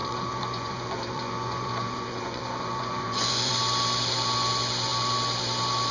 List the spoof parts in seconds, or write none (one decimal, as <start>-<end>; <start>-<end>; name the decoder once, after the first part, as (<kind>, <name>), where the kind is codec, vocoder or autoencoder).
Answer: 0.0-3.5 (vocoder, Vocos)